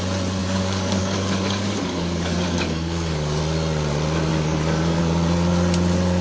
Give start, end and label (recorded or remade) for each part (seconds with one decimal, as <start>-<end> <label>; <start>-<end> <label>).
0.0-0.4 recorded; 0.4-3.4 remade; 3.4-4.3 recorded; 4.3-5.0 remade; 5.0-6.2 recorded